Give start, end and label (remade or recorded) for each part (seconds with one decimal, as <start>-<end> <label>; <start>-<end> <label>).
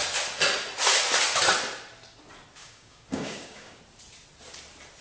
0.0-2.6 recorded; 2.6-3.8 remade; 3.8-5.0 recorded